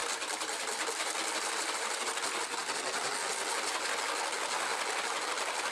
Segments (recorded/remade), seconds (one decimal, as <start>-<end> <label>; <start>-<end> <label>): 0.0-2.1 remade; 2.1-5.7 recorded